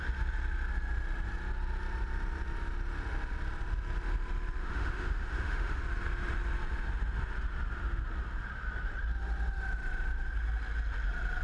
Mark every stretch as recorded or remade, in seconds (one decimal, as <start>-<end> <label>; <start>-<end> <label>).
0.0-4.6 recorded; 4.6-5.8 remade; 5.8-11.4 recorded